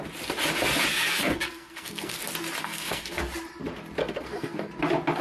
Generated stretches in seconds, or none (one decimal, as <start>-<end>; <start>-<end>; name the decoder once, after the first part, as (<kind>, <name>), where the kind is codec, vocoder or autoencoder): 0.9-2.2 (codec, SNAC); 2.6-3.2; 4.0-4.7